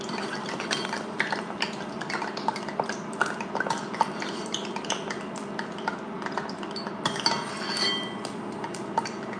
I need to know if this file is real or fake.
real